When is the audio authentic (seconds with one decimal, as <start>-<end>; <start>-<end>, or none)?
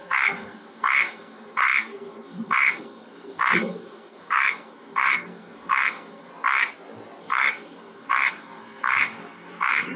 6.3-7.2